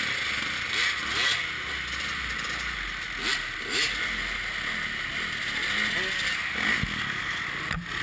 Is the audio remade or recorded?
recorded